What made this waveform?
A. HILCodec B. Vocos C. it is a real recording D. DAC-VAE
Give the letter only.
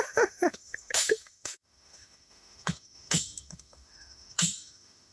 D